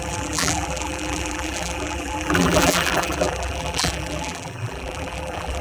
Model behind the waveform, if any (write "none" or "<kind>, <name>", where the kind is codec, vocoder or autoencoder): vocoder, BigVGAN v2